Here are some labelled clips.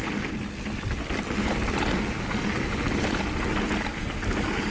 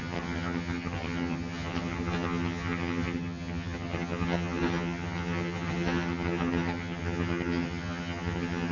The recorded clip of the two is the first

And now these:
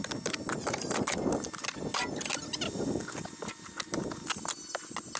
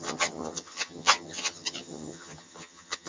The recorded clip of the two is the first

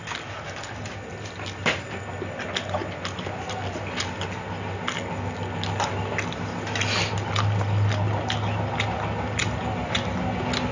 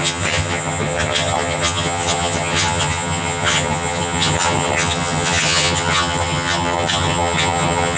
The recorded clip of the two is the first